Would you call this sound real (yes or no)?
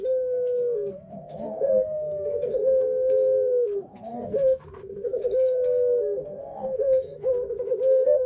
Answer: no